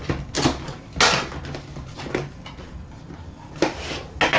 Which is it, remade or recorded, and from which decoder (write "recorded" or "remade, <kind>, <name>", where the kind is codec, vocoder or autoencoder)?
recorded